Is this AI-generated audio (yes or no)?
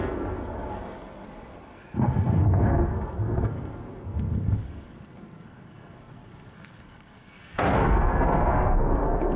yes